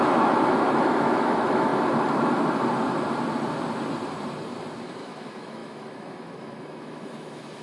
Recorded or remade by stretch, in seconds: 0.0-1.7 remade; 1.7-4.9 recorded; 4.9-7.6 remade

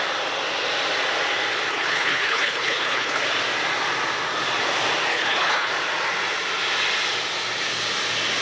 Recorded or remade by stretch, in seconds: 0.0-1.7 recorded; 1.7-3.2 remade; 3.2-5.1 recorded; 5.1-5.7 remade; 5.7-8.4 recorded

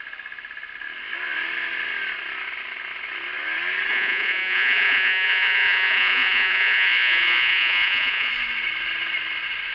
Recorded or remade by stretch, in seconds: 0.0-3.9 recorded; 3.9-8.3 remade; 8.3-9.7 recorded